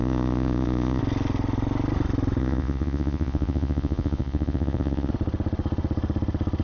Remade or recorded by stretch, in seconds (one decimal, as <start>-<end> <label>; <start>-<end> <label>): 0.0-1.0 remade; 1.0-2.4 recorded; 2.4-5.1 remade; 5.1-6.6 recorded